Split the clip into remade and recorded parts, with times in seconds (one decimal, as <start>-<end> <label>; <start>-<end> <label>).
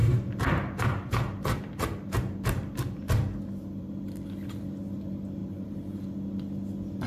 0.0-3.9 remade; 3.9-5.4 recorded; 5.4-6.1 remade; 6.1-7.1 recorded